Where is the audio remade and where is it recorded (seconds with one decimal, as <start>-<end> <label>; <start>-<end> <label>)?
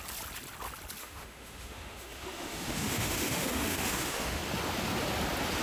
0.0-1.0 recorded; 1.0-4.4 remade; 4.4-5.6 recorded